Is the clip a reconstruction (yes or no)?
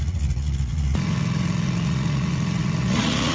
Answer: yes